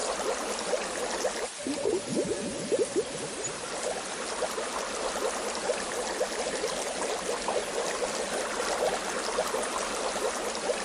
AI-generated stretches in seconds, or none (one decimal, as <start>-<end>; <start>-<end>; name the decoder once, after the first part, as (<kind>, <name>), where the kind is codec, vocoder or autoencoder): none